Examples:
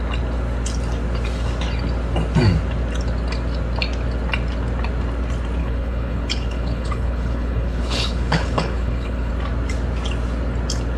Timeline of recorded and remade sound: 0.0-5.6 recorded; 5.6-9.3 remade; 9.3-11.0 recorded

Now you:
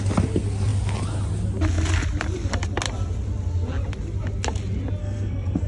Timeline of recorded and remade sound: 0.0-5.0 recorded; 5.0-5.7 remade

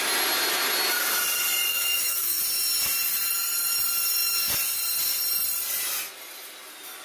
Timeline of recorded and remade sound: 0.0-1.7 recorded; 1.7-2.4 remade; 2.4-7.0 recorded

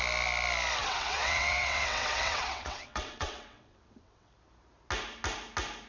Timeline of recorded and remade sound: 0.0-0.8 recorded; 0.8-4.3 remade; 4.3-5.9 recorded

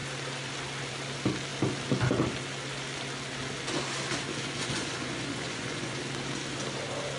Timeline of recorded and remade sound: 0.0-4.3 recorded; 4.3-6.0 remade; 6.0-7.2 recorded

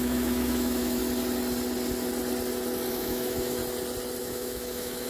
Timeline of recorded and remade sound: 0.0-1.0 remade; 1.0-2.9 recorded; 2.9-3.6 remade; 3.6-4.2 recorded; 4.2-5.1 remade

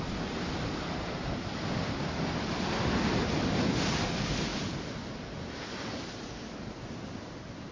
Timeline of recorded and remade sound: 0.0-7.7 recorded